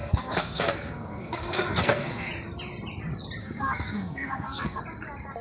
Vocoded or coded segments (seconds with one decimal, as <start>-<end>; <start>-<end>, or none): 0.0-2.3; 3.4-4.8